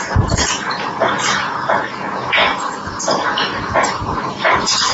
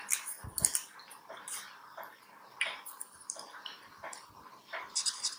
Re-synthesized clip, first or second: first